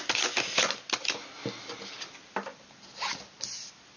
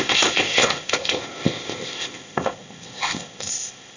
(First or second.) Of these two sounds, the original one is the first